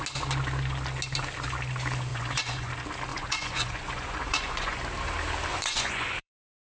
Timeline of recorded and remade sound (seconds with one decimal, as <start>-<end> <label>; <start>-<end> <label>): 0.0-2.1 recorded; 2.1-2.7 remade; 2.7-3.1 recorded; 3.1-4.8 remade; 4.8-5.5 recorded; 5.5-6.7 remade

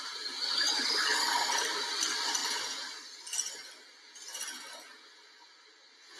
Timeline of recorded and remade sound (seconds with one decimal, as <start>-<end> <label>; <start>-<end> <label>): 0.0-2.4 remade; 2.4-6.2 recorded

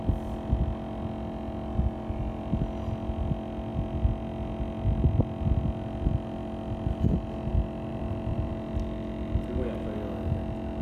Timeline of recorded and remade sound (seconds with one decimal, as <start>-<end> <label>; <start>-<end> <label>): 0.0-7.9 recorded; 7.9-8.5 remade; 8.5-10.8 recorded